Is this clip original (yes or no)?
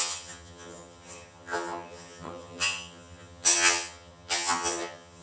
no